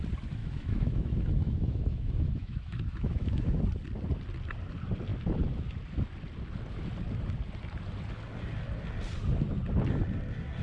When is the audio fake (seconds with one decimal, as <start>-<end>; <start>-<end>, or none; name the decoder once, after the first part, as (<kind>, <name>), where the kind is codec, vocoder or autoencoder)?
0.4-3.6 (autoencoder, DAC-VAE)